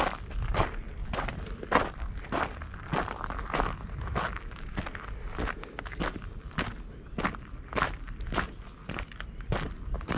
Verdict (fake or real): real